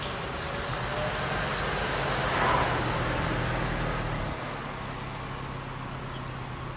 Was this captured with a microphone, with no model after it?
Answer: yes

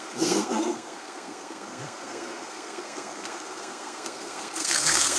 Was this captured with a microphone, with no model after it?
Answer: no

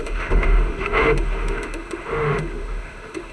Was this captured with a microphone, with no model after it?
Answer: no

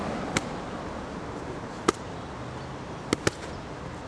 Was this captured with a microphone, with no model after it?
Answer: yes